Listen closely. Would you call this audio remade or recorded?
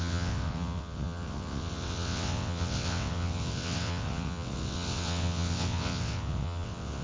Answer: remade